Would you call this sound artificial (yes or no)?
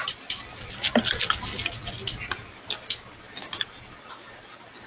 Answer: no